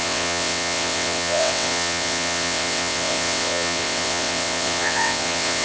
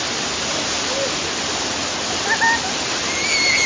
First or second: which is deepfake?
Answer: first